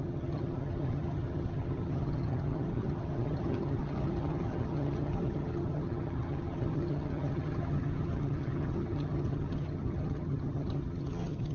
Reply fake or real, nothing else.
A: fake